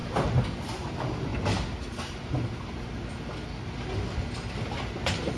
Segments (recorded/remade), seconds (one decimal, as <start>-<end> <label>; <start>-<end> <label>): 0.0-5.4 recorded